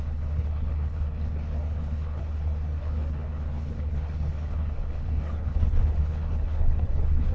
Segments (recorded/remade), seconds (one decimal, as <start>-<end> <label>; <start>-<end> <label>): 0.0-2.2 remade; 2.2-2.8 recorded; 2.8-7.3 remade